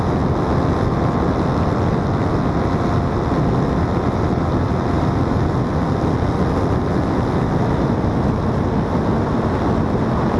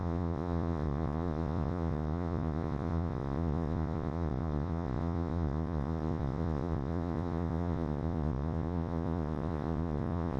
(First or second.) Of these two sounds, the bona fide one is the first